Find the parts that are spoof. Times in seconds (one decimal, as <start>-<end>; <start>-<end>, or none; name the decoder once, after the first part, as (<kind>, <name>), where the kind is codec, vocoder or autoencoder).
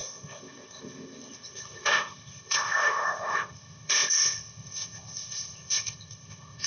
0.0-6.7 (codec, ZipCodec)